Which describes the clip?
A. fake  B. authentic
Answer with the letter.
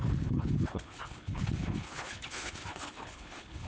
A